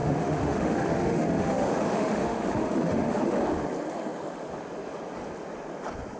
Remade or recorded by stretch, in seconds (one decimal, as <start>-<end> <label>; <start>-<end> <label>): 0.0-3.6 remade; 3.6-6.2 recorded